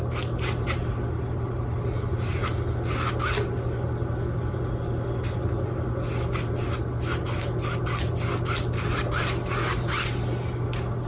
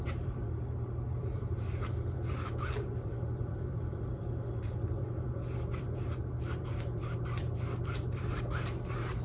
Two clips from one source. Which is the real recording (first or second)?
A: first